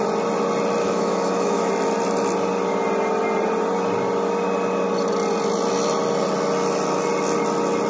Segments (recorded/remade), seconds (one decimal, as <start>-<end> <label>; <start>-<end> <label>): 0.0-0.8 recorded; 0.8-1.7 remade; 1.7-7.9 recorded